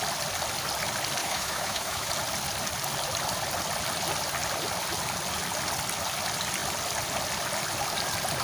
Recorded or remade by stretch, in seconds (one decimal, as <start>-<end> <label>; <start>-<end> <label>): 0.0-1.2 recorded; 1.2-2.1 remade; 2.1-8.4 recorded